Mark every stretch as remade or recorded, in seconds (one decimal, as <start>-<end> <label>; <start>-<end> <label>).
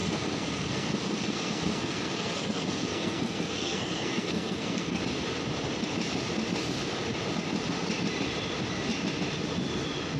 0.0-5.0 remade; 5.0-10.2 recorded